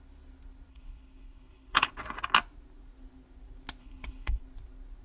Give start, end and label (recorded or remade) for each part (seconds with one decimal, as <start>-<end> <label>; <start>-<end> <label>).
0.0-0.7 recorded; 0.7-1.9 remade; 1.9-3.8 recorded; 3.8-4.4 remade; 4.4-5.0 recorded